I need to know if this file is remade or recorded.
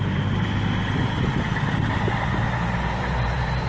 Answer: remade